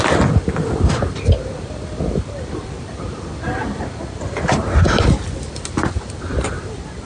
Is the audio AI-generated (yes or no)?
yes